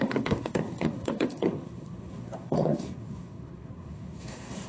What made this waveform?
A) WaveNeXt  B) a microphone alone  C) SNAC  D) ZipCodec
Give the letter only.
C